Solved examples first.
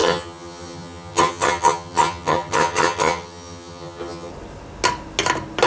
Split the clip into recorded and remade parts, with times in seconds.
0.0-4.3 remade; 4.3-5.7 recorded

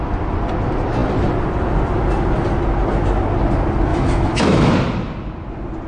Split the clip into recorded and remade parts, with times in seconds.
0.0-3.9 recorded; 3.9-4.7 remade; 4.7-5.9 recorded

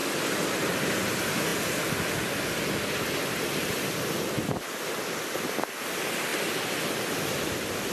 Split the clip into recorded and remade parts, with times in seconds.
0.0-7.9 recorded

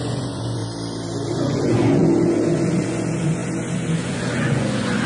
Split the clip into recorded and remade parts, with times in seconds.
0.0-0.6 remade; 0.6-1.3 recorded; 1.3-5.1 remade

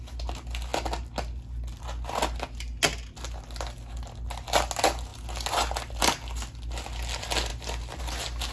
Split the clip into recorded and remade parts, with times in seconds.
0.0-8.5 recorded

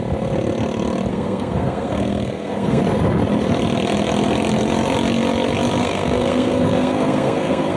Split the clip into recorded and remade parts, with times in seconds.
0.0-1.1 recorded; 1.1-2.8 remade; 2.8-5.8 recorded; 5.8-7.8 remade

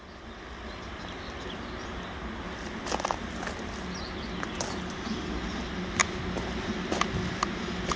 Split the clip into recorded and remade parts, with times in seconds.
0.0-8.0 recorded

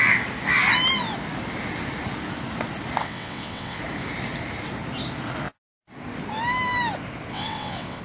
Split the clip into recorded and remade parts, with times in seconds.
0.0-3.0 recorded; 3.0-3.8 remade; 3.8-7.3 recorded; 7.3-8.0 remade